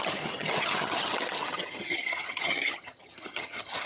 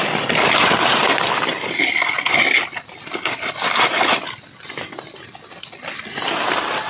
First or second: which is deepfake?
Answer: first